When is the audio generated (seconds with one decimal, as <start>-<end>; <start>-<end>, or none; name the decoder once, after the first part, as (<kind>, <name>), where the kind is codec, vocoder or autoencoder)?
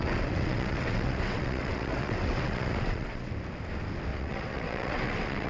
0.0-3.3 (vocoder, WaveNeXt); 4.1-5.5